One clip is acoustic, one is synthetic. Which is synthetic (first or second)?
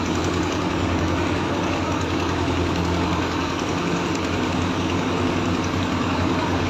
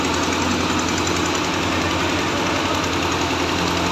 first